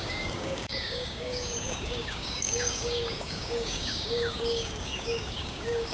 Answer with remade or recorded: remade